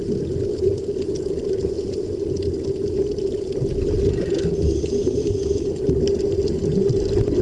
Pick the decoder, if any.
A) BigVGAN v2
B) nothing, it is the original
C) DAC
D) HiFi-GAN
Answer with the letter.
B